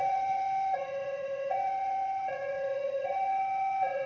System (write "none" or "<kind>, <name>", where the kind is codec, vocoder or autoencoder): vocoder, WaveNeXt